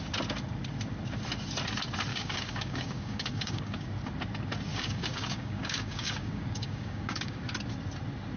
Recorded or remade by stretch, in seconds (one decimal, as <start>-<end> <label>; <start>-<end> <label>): 0.0-2.1 recorded; 2.1-3.9 remade; 3.9-4.7 recorded; 4.7-7.4 remade; 7.4-8.4 recorded